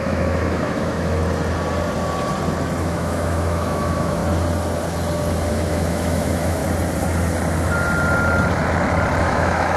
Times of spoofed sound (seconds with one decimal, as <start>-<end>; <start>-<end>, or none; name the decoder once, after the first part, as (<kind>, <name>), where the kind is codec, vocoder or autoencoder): 0.0-1.2 (autoencoder, DAC-VAE); 2.8-4.2; 5.5-6.6; 9.2-9.8